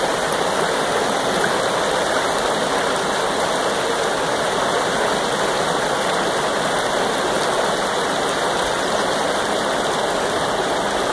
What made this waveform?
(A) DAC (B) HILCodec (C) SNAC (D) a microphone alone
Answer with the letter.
D